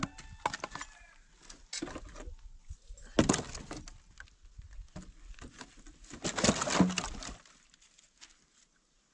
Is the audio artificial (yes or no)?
no